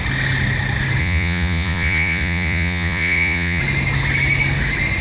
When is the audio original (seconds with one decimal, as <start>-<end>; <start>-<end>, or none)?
0.0-1.0; 3.6-5.0